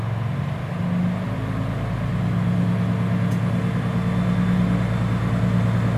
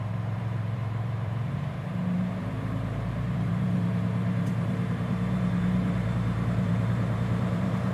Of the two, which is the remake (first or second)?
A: second